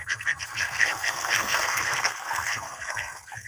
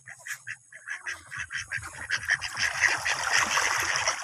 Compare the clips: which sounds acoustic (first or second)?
second